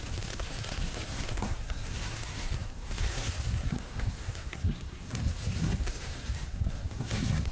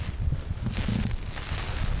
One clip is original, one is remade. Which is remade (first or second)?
first